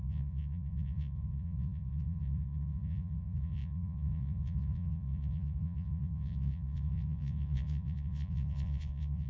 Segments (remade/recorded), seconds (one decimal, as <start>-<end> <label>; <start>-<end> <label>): 0.0-9.3 remade